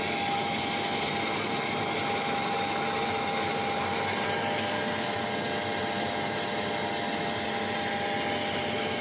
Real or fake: real